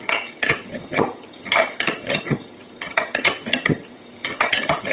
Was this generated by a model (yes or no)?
yes